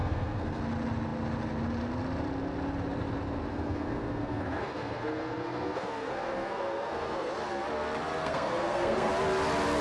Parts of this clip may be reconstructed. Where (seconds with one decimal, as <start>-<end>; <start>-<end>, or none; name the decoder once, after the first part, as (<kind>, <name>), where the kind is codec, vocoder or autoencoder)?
0.0-0.6 (codec, SNAC); 3.5-7.3; 8.2-9.1